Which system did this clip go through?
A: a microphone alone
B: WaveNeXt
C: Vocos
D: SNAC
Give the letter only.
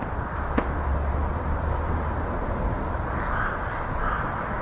A